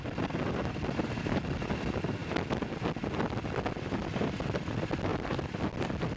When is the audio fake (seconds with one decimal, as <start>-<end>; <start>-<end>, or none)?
5.1-5.6